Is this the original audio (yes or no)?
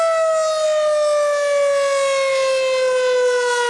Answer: yes